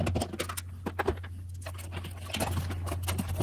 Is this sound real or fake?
real